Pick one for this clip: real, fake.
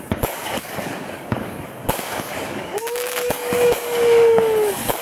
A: fake